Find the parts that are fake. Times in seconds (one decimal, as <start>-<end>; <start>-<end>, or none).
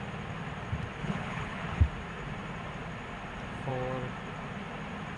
1.0-1.8